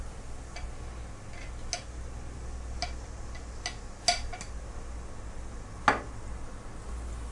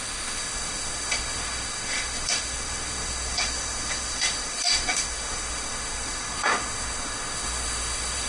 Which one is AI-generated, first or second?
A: second